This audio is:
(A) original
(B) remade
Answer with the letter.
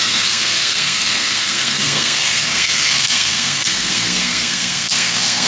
B